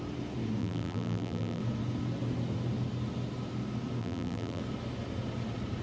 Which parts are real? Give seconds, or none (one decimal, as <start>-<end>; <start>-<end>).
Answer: 0.0-0.6; 1.6-4.0; 4.6-5.8

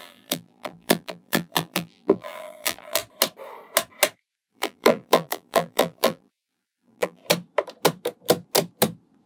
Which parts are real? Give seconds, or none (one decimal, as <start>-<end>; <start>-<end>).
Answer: 3.0-4.5; 7.2-9.3